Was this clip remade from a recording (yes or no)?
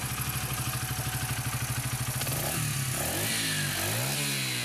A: no